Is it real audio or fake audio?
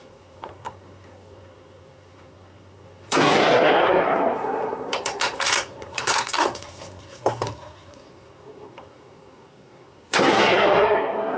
fake